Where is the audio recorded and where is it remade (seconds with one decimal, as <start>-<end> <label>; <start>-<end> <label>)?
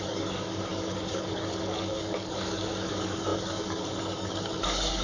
0.0-5.0 remade